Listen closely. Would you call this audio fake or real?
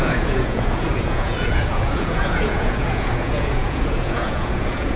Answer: fake